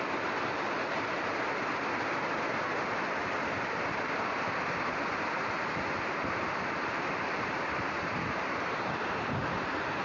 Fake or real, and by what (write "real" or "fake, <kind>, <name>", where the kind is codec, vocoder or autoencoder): fake, vocoder, BigVGAN v2